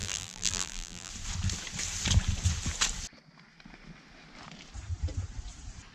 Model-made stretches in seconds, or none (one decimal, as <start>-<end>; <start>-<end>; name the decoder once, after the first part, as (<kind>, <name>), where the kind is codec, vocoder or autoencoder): 0.0-1.1 (vocoder, BigVGAN v2)